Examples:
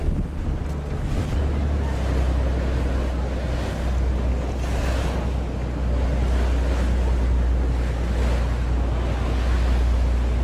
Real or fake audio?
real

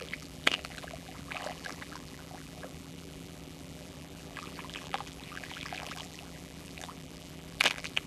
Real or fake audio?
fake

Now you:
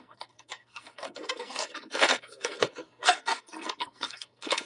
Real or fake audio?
fake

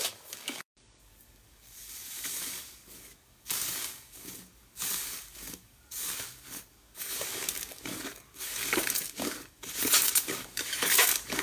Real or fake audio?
fake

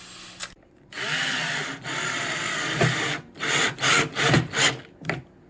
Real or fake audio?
real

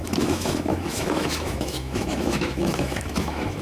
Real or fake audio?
fake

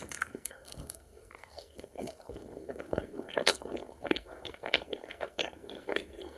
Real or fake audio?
fake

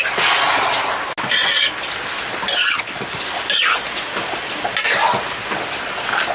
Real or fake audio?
real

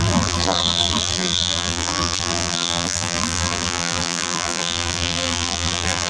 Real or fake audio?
fake